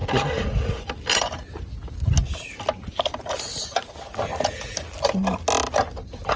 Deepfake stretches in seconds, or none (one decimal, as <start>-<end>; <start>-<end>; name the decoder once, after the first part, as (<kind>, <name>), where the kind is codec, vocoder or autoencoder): none